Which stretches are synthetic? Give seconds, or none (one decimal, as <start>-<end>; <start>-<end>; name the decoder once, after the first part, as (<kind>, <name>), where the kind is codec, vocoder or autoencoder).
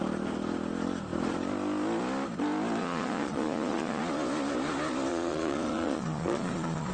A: 2.8-4.0 (vocoder, Vocos); 5.1-6.9